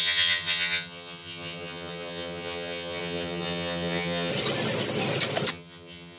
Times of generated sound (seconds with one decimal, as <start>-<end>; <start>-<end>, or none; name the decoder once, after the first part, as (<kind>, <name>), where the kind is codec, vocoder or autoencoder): 0.0-4.3 (vocoder, HiFi-GAN); 5.5-6.2